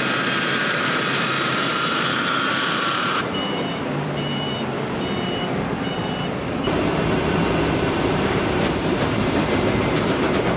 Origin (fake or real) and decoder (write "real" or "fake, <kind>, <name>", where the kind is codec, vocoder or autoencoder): fake, vocoder, BigVGAN v2